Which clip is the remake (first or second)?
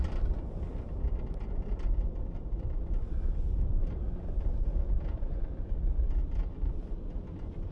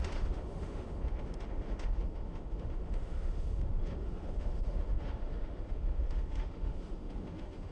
second